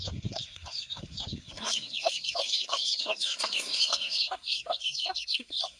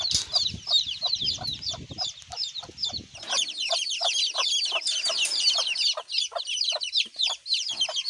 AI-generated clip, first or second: first